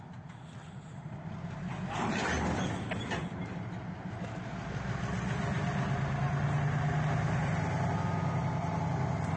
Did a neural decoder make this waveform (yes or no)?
no